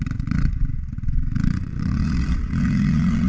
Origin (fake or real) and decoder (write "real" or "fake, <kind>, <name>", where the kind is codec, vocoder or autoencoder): fake, vocoder, Vocos